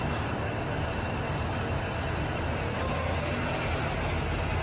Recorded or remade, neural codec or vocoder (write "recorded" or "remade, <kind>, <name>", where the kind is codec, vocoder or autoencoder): recorded